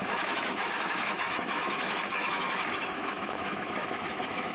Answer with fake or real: fake